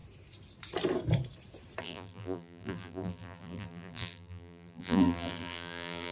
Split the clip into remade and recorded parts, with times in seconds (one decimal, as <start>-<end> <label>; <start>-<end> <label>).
0.0-1.8 recorded; 1.8-6.1 remade